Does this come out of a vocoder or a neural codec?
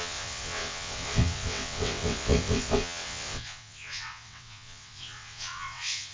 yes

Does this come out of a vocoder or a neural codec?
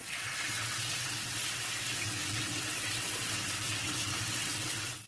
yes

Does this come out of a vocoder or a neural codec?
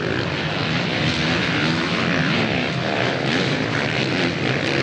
no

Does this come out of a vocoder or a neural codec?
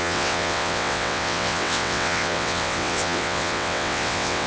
yes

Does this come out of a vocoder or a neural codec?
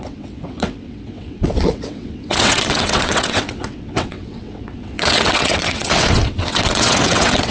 yes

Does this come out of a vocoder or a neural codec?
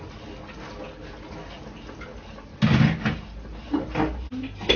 no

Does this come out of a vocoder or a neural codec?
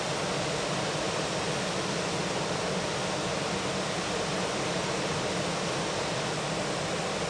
no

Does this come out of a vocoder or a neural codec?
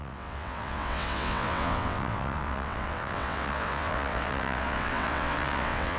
yes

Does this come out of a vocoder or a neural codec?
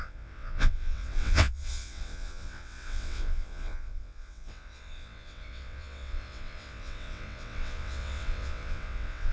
yes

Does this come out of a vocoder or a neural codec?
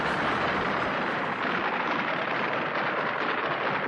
no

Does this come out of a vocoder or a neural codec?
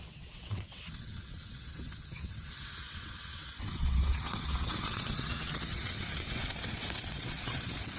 yes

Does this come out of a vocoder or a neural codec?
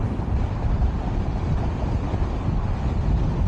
no